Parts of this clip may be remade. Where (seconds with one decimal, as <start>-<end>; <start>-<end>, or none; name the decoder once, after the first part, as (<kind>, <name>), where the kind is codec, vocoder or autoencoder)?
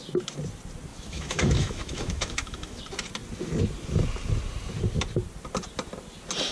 0.9-2.8 (autoencoder, DAC-VAE)